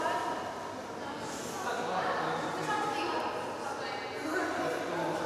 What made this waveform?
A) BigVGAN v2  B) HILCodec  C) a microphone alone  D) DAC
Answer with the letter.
C